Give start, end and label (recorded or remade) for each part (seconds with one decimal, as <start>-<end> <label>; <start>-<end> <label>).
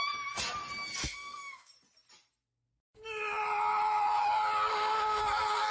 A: 0.0-1.0 recorded; 1.0-1.7 remade; 1.7-4.7 recorded; 4.7-5.2 remade; 5.2-5.7 recorded